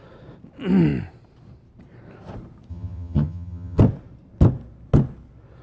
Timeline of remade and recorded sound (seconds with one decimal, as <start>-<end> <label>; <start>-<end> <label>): 0.0-2.7 recorded; 2.7-3.8 remade; 3.8-5.6 recorded